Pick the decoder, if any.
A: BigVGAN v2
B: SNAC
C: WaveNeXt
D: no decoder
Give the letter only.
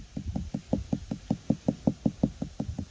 D